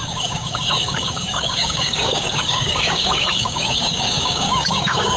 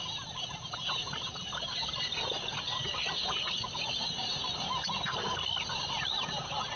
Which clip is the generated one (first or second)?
first